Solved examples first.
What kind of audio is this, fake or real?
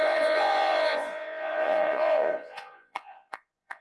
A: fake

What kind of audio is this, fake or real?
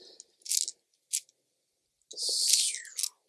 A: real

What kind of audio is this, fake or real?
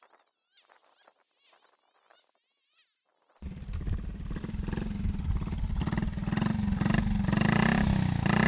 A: real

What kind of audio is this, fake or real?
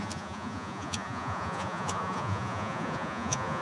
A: fake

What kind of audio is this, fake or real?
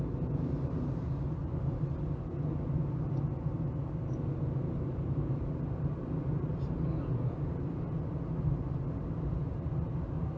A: real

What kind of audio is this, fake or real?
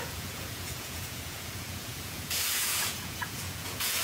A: fake